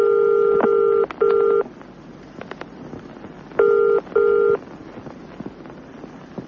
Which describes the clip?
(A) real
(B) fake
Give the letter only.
A